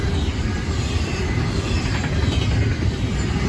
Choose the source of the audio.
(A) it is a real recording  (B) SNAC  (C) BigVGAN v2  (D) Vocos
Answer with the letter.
A